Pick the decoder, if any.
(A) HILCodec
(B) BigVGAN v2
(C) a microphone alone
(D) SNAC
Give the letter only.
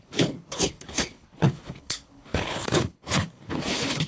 A